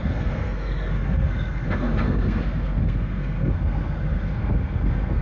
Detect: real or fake fake